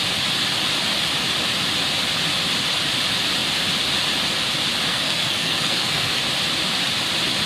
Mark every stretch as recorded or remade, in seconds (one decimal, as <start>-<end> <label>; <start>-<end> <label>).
0.0-4.9 recorded; 4.9-6.2 remade; 6.2-7.5 recorded